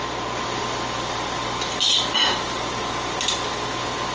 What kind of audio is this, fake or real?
real